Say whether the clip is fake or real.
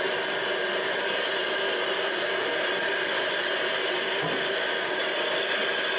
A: real